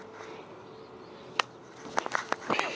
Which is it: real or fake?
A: real